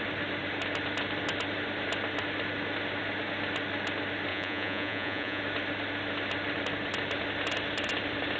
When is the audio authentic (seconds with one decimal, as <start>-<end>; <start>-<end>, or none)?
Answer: 0.0-4.3; 5.4-8.4